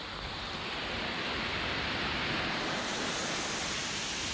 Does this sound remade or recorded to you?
recorded